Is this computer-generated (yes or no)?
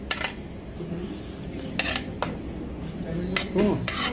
no